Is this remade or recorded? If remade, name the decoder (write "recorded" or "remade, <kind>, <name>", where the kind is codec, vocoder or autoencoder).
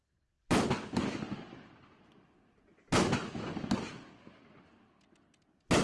recorded